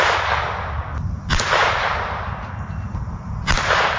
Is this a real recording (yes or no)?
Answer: yes